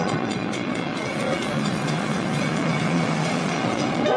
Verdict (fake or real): fake